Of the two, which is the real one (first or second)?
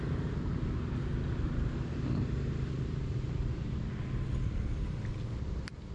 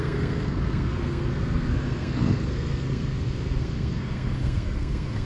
first